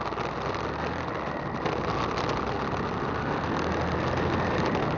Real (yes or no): yes